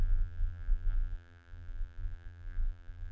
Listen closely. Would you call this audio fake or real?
fake